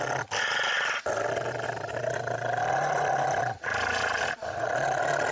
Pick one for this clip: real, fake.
real